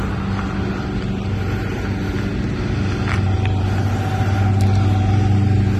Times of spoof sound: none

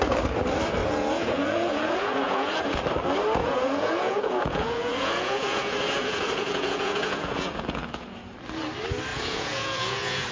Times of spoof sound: 0.8-2.8 (vocoder, Vocos); 3.4-8.2; 9.1-10.3

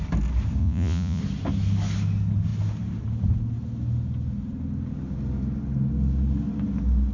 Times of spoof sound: 0.6-1.2 (vocoder, Vocos)

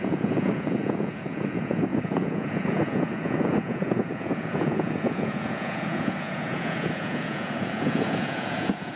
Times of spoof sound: 0.0-9.0 (vocoder, Vocos)

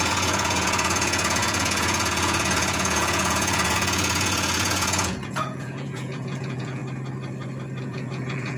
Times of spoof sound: 0.0-6.8 (vocoder, Vocos); 7.8-8.6

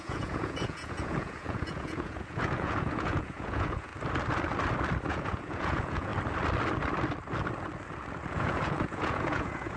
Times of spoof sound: 0.0-3.9 (vocoder, Vocos); 5.1-6.1; 8.3-9.8

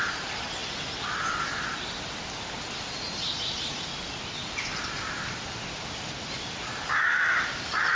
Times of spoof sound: none